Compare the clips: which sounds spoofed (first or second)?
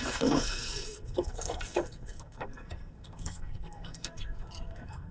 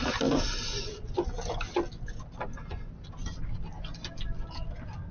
first